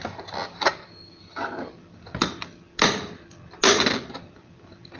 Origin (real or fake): real